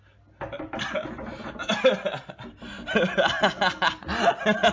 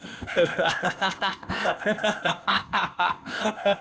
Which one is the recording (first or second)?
first